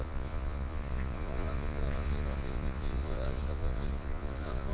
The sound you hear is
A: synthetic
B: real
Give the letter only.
A